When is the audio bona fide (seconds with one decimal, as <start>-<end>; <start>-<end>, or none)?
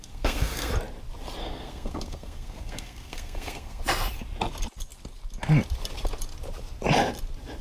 0.7-1.4; 3.8-7.6